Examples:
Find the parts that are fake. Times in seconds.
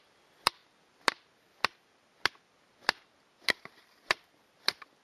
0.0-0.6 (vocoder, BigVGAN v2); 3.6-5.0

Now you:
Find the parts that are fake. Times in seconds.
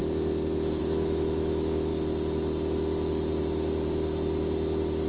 0.8-1.9 (autoencoder, DAC-VAE)